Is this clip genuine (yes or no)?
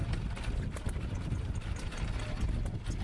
yes